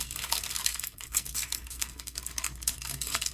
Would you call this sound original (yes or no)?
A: no